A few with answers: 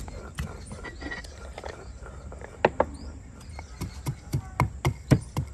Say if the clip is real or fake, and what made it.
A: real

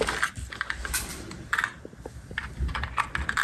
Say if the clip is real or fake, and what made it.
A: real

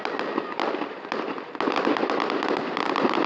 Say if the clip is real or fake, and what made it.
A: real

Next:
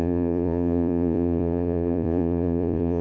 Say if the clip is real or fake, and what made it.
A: fake, vocoder, Vocos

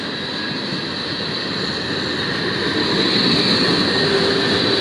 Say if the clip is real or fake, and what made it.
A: real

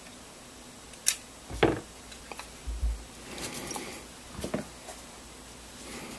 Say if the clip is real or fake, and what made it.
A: real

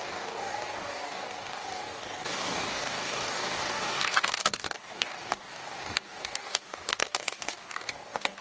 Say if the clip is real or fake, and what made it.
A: fake, codec, DAC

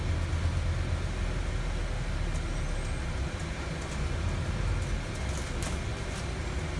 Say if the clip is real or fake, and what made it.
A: real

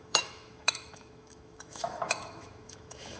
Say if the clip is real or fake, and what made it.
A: fake, autoencoder, DAC-VAE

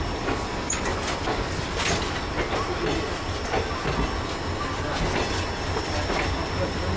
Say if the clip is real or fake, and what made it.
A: real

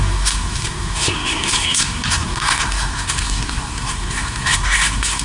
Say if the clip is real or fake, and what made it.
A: fake, codec, SNAC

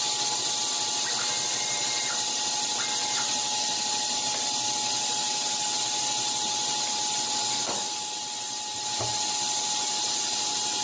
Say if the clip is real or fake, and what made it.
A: real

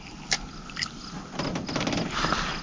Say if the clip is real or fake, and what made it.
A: real